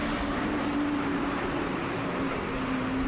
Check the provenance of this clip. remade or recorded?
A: remade